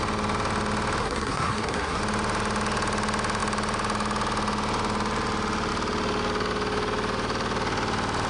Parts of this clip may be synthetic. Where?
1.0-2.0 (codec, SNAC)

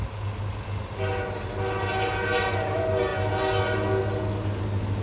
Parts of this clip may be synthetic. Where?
none